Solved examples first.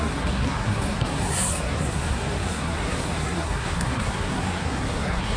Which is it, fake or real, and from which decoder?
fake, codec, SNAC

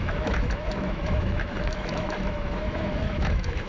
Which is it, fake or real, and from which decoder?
fake, autoencoder, DAC-VAE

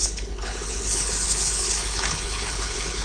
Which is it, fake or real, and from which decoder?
fake, codec, HILCodec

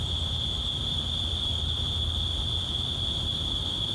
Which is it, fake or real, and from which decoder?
fake, vocoder, BigVGAN v2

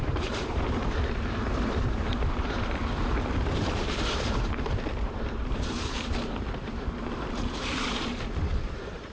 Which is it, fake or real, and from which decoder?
fake, vocoder, BigVGAN v2